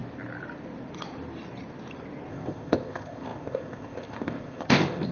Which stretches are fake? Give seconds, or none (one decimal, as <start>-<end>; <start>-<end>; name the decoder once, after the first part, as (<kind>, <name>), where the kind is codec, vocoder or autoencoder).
2.3-5.1 (codec, ZipCodec)